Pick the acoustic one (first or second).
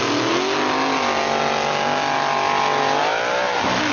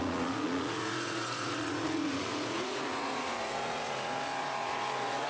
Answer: first